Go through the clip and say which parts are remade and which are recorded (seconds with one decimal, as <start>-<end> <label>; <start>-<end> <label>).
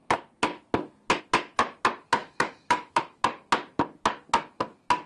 0.0-2.2 recorded; 2.2-3.2 remade; 3.2-5.1 recorded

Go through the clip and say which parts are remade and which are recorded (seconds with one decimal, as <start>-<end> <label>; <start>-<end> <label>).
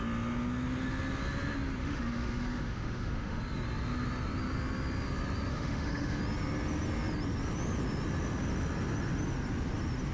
0.0-1.8 recorded; 1.8-3.4 remade; 3.4-5.5 recorded; 5.5-6.2 remade; 6.2-10.1 recorded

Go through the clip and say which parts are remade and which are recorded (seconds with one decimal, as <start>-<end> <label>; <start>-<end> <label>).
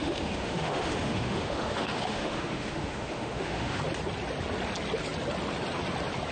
0.0-3.8 remade; 3.8-6.3 recorded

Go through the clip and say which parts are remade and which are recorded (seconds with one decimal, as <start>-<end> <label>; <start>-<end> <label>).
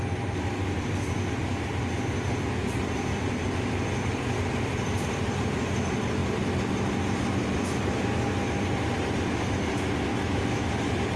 0.0-10.1 recorded; 10.1-10.7 remade; 10.7-11.2 recorded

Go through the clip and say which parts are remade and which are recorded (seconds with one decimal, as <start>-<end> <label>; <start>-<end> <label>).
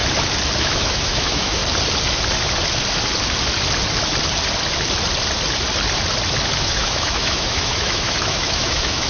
0.0-0.6 recorded; 0.6-1.6 remade; 1.6-6.6 recorded; 6.6-9.1 remade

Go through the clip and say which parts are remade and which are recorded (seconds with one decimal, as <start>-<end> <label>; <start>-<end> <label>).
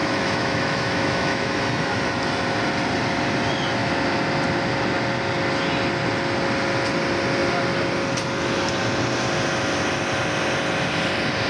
0.0-1.6 remade; 1.6-11.5 recorded